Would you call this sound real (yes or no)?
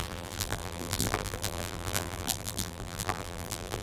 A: no